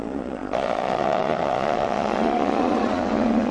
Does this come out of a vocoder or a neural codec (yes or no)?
yes